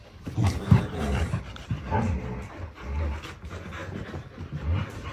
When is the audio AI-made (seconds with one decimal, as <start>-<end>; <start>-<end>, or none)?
none